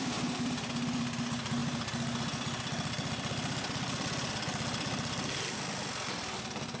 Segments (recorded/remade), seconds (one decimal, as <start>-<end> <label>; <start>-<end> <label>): 0.0-6.8 recorded